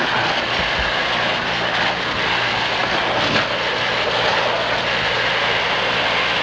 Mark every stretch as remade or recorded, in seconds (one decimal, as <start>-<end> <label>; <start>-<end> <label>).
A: 0.0-6.4 recorded